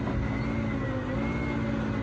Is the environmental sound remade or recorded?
recorded